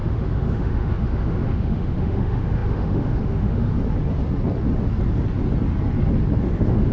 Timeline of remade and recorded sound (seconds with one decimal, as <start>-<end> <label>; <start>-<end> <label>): 0.0-3.7 remade; 3.7-6.4 recorded; 6.4-6.9 remade